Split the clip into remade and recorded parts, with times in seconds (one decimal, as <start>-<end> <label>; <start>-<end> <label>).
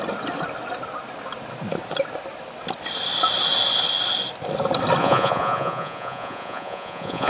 0.0-5.0 recorded; 5.0-7.3 remade